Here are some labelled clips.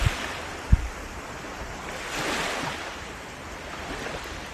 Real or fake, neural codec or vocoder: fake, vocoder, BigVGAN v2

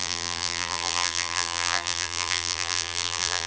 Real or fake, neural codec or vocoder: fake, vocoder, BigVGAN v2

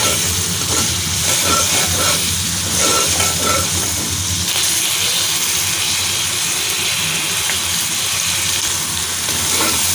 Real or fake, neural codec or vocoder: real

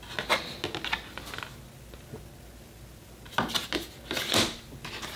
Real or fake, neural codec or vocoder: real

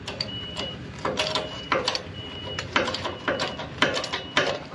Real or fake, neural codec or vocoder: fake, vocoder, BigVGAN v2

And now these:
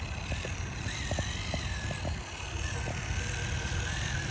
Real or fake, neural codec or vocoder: fake, vocoder, BigVGAN v2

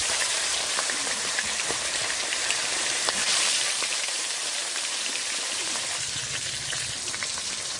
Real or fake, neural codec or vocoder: fake, vocoder, BigVGAN v2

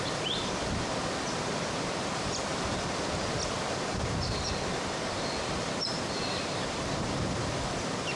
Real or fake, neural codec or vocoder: fake, vocoder, BigVGAN v2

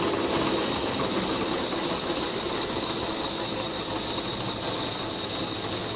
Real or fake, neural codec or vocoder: real